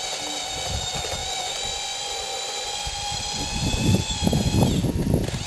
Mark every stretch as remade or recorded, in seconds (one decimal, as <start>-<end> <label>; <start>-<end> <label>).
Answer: 0.0-1.2 recorded; 1.2-4.5 remade; 4.5-5.5 recorded